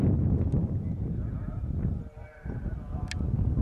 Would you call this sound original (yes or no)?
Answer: yes